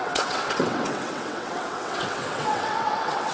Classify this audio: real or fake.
fake